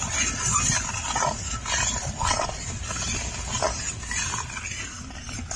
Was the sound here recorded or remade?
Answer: recorded